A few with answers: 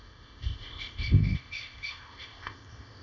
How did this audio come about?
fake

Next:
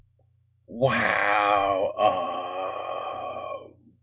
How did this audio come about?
fake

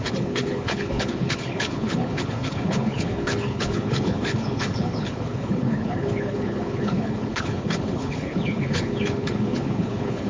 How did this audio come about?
fake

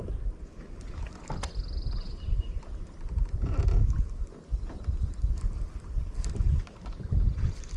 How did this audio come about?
real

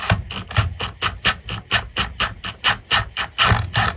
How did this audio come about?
real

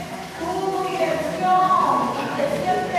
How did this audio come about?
fake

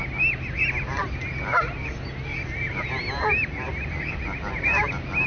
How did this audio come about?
real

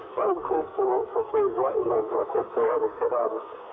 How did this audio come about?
fake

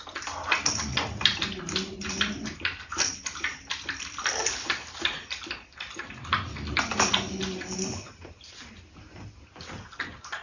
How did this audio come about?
real